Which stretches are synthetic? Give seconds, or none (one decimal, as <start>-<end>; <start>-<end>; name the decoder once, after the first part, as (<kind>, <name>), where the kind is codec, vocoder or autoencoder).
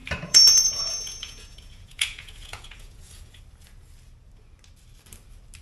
0.0-3.4 (vocoder, Vocos)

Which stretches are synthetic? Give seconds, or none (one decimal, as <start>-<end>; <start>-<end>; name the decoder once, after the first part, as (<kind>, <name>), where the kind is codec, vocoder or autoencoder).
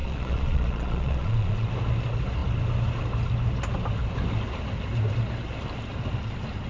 0.0-1.7 (vocoder, Vocos)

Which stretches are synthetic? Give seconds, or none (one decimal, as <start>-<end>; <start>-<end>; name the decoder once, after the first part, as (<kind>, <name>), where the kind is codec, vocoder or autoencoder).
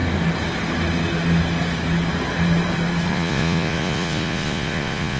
3.1-5.2 (vocoder, Vocos)